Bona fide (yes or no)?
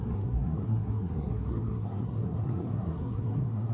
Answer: no